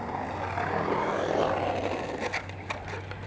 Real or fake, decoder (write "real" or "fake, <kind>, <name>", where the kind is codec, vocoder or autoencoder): real